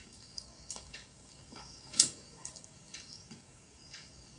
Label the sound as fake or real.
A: fake